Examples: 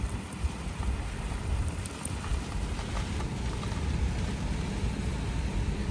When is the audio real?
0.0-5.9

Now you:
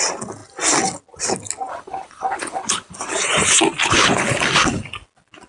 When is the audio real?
0.0-1.7; 3.1-3.8; 4.4-5.5

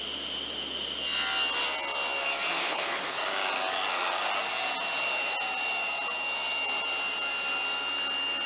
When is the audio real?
0.0-2.6; 3.2-8.5

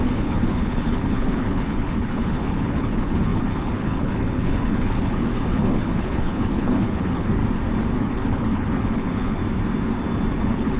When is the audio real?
7.4-8.0; 9.4-10.3

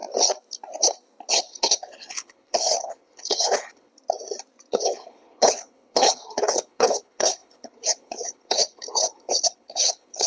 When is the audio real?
0.0-1.3; 3.9-4.7

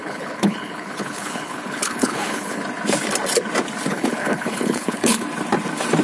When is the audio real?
2.6-3.9; 5.2-6.0

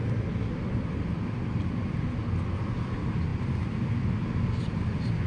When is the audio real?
0.0-5.3